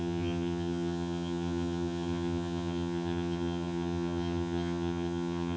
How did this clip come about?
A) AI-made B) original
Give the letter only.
A